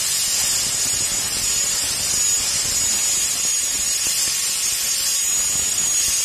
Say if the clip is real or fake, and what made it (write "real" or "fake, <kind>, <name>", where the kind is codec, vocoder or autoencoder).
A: real